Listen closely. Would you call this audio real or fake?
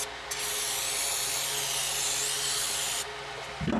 real